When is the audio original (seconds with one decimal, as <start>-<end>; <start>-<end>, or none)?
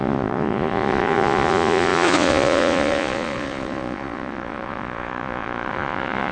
none